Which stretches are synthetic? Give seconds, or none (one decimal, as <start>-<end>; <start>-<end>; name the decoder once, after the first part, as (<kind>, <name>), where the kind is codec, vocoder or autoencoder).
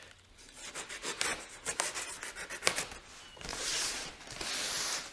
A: 3.5-4.1 (vocoder, Vocos)